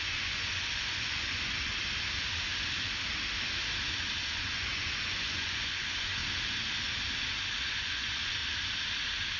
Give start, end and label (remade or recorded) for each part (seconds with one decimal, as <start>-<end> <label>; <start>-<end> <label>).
0.0-1.7 remade; 1.7-4.3 recorded; 4.3-6.2 remade; 6.2-7.7 recorded; 7.7-8.4 remade; 8.4-9.4 recorded